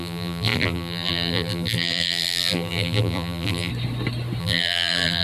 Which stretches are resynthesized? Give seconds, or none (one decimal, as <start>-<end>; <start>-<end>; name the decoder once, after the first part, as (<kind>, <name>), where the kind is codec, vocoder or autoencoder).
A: 0.0-3.7 (vocoder, BigVGAN v2); 4.4-5.2